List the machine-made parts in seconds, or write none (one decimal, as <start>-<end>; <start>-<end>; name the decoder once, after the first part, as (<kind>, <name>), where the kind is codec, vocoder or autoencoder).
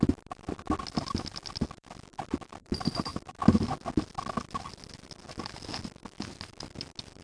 none